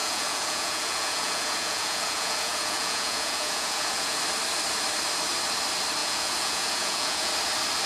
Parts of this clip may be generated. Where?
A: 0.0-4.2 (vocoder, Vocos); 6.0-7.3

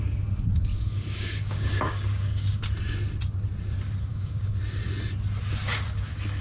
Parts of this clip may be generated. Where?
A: 0.7-2.6 (codec, DAC); 4.1-4.6

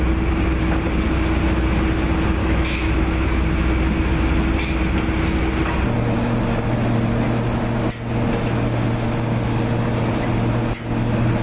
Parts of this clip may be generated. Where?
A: 2.4-3.0 (autoencoder, DAC-VAE)

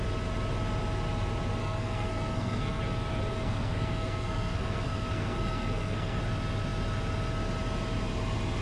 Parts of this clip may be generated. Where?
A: 1.6-2.8 (codec, SNAC); 3.3-6.2

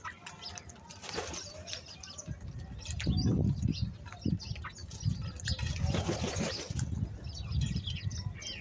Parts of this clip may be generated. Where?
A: none